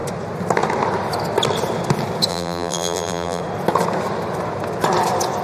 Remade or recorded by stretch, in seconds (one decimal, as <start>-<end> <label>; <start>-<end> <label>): 0.0-2.3 recorded; 2.3-3.4 remade; 3.4-5.4 recorded